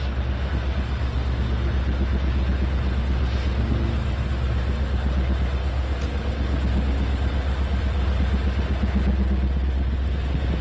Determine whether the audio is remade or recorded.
recorded